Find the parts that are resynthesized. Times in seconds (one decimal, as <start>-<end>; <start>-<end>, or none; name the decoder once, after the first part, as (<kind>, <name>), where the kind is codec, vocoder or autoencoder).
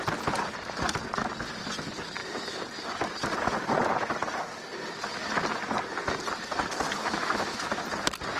7.0-7.8 (autoencoder, DAC-VAE)